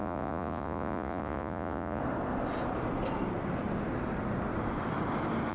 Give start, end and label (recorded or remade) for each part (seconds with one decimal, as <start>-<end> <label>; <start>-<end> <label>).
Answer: 0.0-2.0 remade; 2.0-5.5 recorded